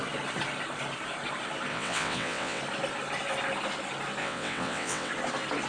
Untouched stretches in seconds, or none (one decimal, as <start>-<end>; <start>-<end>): 0.0-1.7; 2.6-4.2; 5.1-5.7